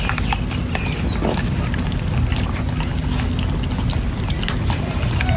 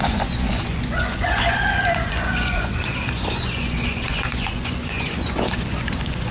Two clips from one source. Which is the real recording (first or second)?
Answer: first